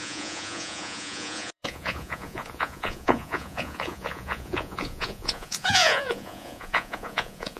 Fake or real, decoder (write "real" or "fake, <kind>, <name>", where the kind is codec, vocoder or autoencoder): fake, vocoder, Vocos